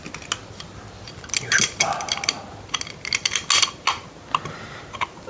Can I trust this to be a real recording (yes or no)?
yes